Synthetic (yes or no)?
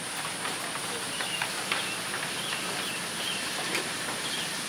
no